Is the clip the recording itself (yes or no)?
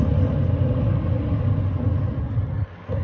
yes